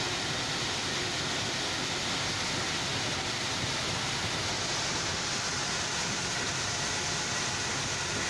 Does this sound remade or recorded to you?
recorded